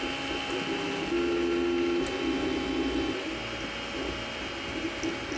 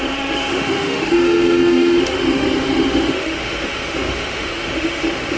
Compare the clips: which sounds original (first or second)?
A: first